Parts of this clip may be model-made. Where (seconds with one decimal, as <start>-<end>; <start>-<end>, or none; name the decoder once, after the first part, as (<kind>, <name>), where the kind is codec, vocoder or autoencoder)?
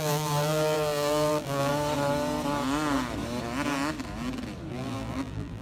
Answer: 0.0-1.7 (vocoder, BigVGAN v2); 4.7-5.6